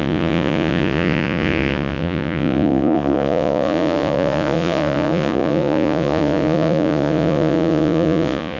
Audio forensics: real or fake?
fake